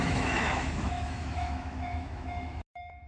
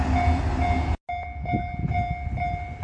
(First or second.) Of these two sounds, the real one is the second